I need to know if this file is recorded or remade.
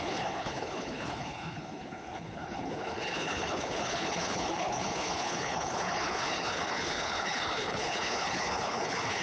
remade